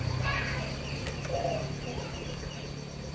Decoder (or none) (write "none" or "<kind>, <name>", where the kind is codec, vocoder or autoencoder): none